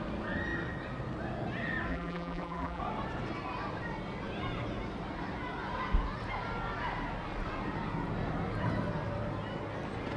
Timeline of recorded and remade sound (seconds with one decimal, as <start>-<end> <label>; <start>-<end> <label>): 0.0-1.9 recorded; 1.9-2.8 remade; 2.8-10.2 recorded